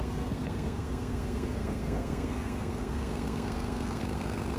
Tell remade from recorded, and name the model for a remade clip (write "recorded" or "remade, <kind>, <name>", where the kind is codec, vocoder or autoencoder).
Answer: remade, codec, SNAC